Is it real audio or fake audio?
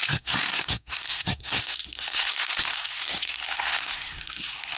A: fake